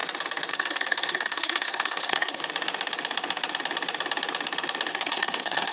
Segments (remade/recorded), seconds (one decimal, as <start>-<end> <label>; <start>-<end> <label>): 0.0-0.5 recorded; 0.5-2.4 remade; 2.4-4.9 recorded; 4.9-5.7 remade